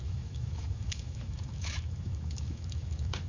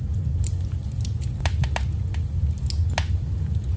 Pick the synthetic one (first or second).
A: first